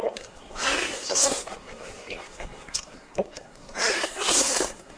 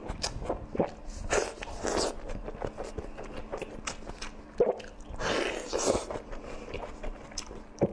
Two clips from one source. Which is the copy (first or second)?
first